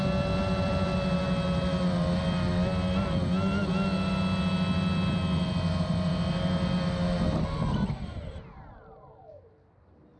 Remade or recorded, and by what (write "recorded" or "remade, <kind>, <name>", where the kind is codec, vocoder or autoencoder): recorded